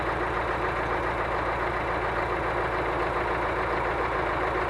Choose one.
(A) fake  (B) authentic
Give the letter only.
B